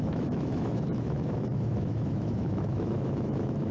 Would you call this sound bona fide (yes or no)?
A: no